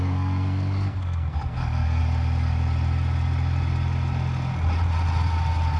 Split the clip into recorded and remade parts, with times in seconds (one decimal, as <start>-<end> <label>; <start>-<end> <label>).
0.0-2.0 remade; 2.0-5.8 recorded